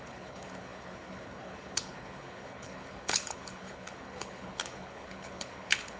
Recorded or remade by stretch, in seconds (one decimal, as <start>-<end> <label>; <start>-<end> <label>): 0.0-6.0 remade